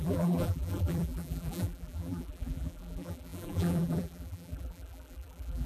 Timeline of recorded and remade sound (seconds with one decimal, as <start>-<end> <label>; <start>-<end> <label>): 0.0-5.7 remade